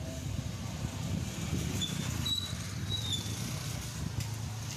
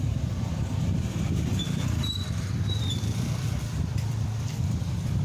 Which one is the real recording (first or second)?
first